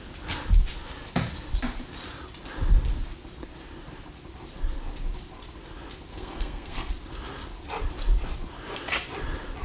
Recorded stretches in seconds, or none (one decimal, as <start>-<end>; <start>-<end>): 0.0-6.1; 6.9-9.6